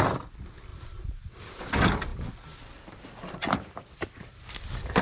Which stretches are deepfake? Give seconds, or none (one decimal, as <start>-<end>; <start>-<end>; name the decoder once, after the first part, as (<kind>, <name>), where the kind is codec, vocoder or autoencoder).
none